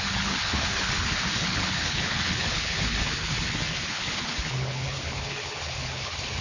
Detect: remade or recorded remade